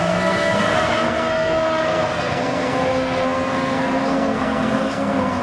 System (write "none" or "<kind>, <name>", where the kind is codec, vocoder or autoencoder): codec, SNAC